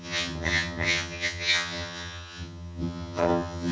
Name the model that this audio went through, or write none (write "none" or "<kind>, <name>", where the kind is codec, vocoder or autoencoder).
vocoder, HiFi-GAN